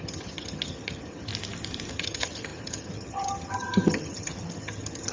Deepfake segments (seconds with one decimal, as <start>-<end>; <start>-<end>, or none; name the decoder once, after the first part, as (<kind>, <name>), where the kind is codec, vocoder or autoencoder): 0.0-1.3 (vocoder, HiFi-GAN); 1.9-5.1